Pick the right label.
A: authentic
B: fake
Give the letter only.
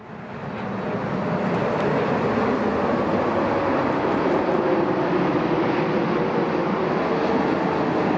A